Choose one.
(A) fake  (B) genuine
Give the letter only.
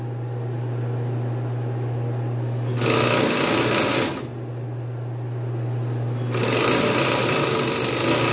B